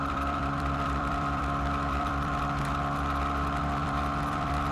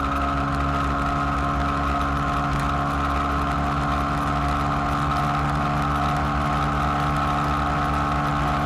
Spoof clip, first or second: first